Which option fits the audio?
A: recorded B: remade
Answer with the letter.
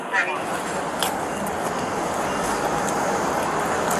A